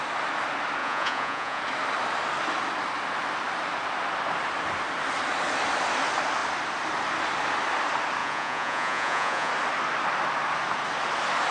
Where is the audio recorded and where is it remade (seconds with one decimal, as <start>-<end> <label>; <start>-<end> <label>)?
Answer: 0.0-0.8 recorded; 0.8-1.6 remade; 1.6-8.2 recorded; 8.2-9.5 remade; 9.5-11.5 recorded